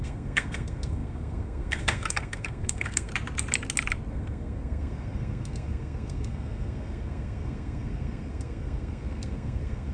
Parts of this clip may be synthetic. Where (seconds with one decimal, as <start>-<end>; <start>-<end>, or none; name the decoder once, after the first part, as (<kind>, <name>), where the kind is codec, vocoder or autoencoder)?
0.0-3.1 (codec, SNAC); 4.1-9.9